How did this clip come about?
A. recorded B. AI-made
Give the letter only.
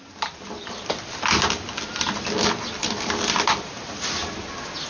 A